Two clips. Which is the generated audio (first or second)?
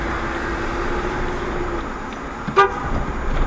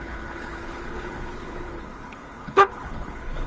second